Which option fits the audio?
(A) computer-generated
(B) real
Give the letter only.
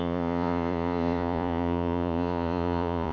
A